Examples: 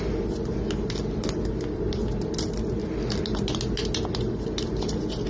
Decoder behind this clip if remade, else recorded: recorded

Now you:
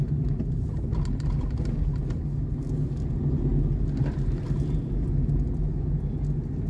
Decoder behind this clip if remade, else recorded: recorded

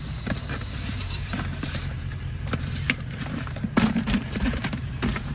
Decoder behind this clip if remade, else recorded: remade, vocoder, BigVGAN v2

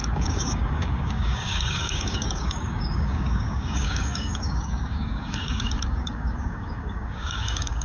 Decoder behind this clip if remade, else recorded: remade, codec, DAC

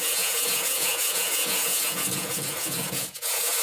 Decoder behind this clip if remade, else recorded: remade, vocoder, Vocos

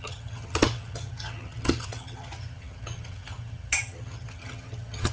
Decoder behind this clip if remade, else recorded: remade, vocoder, HiFi-GAN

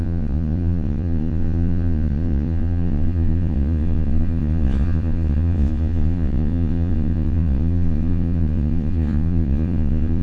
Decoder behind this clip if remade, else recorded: remade, vocoder, Vocos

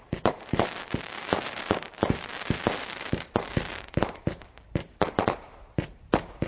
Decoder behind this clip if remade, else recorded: remade, vocoder, BigVGAN v2